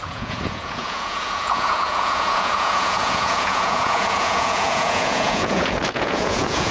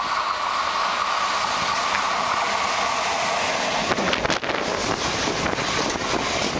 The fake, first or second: first